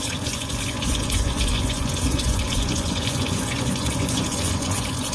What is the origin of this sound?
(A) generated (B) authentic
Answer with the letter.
A